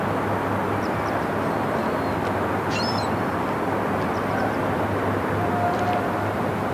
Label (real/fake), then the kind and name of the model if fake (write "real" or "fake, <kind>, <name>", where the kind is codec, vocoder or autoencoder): real